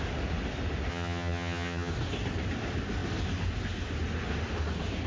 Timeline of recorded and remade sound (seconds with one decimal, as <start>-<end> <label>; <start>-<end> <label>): 0.0-0.9 recorded; 0.9-1.9 remade; 1.9-5.1 recorded